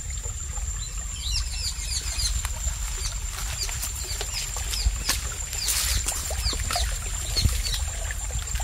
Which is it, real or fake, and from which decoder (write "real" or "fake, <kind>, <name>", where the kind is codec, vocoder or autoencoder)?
real